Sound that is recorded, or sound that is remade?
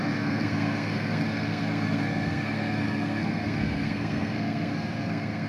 remade